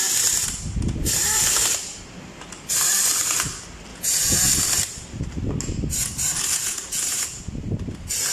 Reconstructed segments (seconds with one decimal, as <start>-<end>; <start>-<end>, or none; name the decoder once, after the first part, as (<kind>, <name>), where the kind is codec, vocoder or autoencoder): 3.9-4.5 (vocoder, Vocos); 6.5-7.4